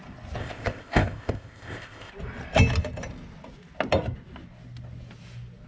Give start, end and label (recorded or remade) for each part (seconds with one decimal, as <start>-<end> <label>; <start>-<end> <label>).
0.0-0.4 recorded; 0.4-2.1 remade; 2.1-5.7 recorded